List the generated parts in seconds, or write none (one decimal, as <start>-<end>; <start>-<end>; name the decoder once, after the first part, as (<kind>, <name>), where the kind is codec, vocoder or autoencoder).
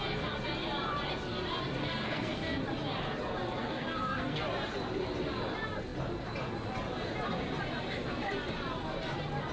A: 1.8-2.6 (codec, SNAC); 3.6-4.4